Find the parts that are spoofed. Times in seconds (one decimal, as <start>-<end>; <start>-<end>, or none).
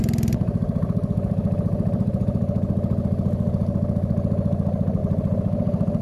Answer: none